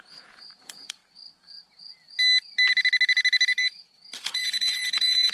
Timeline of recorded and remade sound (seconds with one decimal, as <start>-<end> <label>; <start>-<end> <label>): 0.0-1.0 remade; 1.0-4.2 recorded; 4.2-5.3 remade